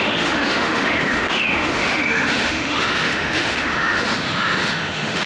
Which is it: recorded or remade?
remade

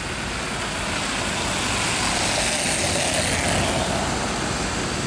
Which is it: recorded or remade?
recorded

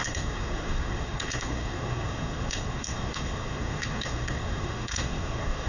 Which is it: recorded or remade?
remade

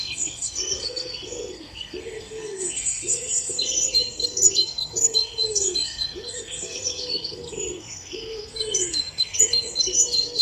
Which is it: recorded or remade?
remade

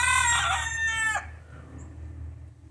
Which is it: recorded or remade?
recorded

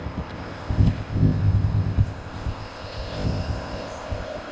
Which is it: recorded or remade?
remade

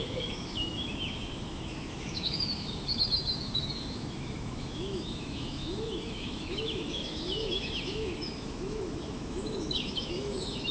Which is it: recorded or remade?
remade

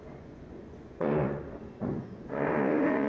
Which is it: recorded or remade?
remade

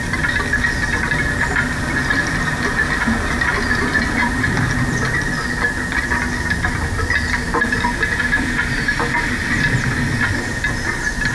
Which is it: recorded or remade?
recorded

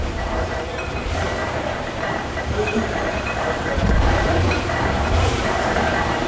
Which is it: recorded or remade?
remade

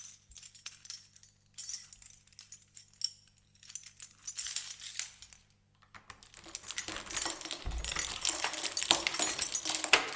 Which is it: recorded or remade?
recorded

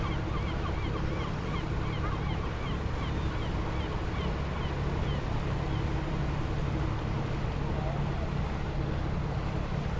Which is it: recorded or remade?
recorded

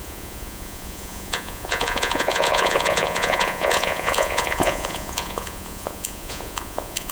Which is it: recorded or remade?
remade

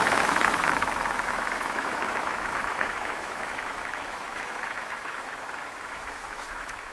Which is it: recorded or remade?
remade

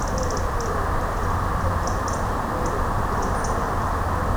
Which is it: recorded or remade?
recorded